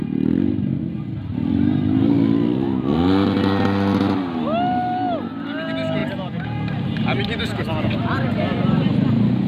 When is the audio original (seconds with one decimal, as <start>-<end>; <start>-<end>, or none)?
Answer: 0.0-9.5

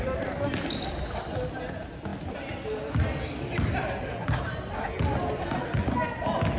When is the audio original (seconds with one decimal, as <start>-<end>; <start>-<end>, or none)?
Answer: 0.0-6.6

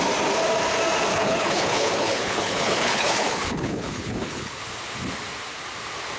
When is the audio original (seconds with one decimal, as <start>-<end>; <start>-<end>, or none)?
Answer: 0.0-1.1; 4.6-6.2

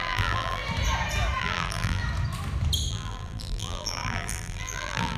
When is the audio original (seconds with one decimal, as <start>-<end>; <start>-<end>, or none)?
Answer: 0.6-1.4; 2.0-2.9

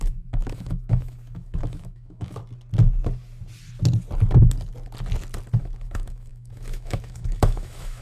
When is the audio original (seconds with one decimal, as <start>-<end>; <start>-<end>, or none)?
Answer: 2.4-5.6

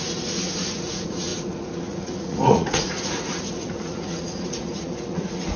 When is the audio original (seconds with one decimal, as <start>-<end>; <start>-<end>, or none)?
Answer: none